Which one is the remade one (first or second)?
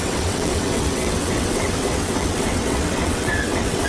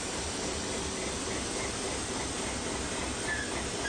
first